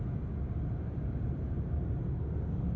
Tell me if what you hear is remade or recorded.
recorded